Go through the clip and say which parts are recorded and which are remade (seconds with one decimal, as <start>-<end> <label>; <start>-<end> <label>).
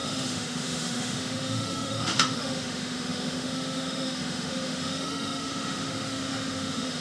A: 0.0-7.0 remade